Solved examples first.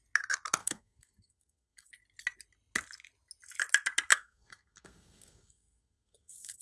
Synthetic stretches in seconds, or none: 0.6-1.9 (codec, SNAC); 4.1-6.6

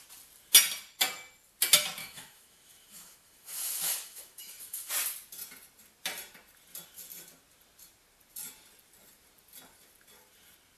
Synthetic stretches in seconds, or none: 2.0-4.9 (autoencoder, DAC-VAE)

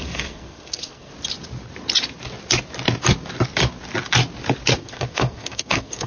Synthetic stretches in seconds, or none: 0.0-1.1 (codec, SNAC); 4.8-6.1

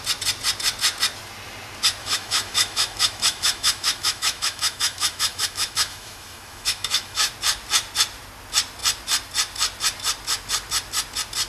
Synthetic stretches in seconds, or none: 2.0-7.3 (autoencoder, DAC-VAE)